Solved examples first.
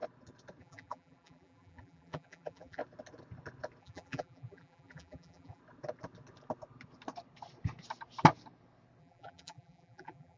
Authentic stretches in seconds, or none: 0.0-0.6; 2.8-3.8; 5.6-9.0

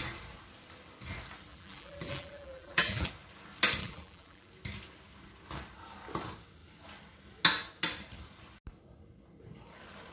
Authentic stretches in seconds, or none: 0.0-1.5; 3.1-3.8; 4.5-10.1

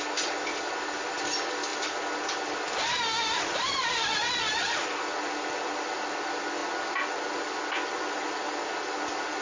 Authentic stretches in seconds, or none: 0.0-9.4

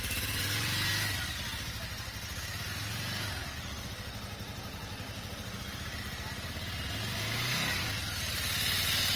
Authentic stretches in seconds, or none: 0.0-9.2